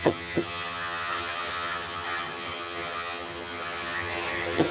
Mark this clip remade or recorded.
remade